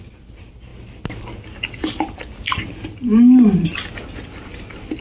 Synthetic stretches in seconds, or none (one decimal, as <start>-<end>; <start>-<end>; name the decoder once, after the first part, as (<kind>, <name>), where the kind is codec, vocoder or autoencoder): none